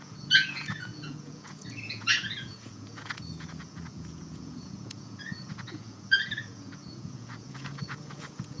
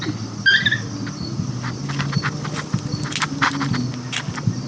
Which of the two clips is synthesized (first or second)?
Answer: first